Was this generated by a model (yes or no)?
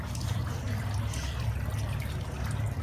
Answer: no